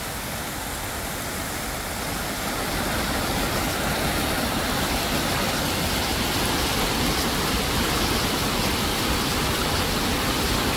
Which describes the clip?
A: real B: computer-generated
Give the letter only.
A